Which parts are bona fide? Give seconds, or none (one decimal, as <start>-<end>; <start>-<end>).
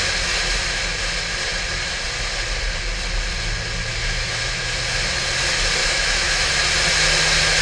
0.0-3.9; 4.8-5.8; 6.5-7.6